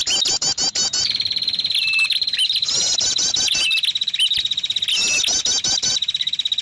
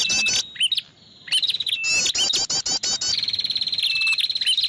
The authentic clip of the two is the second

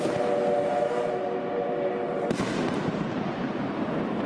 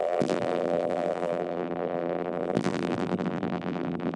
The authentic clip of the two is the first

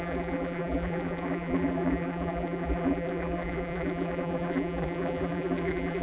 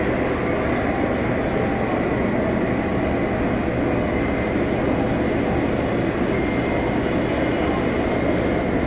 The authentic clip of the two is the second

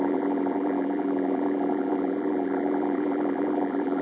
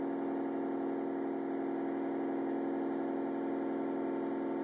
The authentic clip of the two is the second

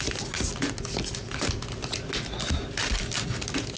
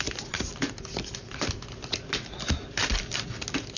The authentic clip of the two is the first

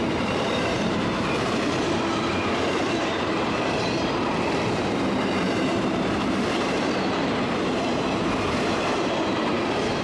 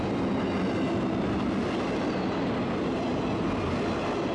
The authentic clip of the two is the second